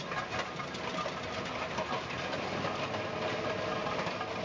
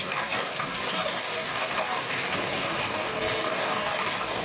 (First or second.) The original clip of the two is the first